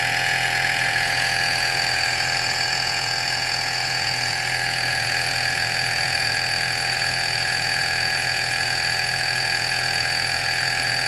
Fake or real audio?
fake